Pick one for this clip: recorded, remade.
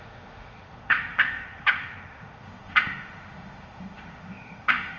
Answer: remade